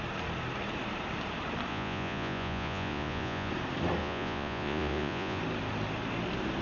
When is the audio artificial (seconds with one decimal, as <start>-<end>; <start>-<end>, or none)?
1.7-3.5; 4.0-5.4